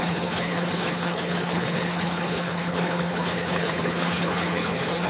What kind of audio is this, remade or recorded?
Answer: remade